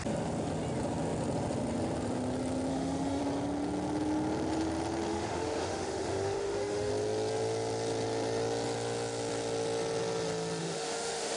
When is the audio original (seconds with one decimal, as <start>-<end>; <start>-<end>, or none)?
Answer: 0.0-2.7; 3.2-5.1; 6.9-10.6